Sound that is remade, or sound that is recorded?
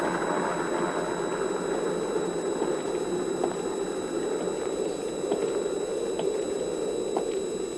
recorded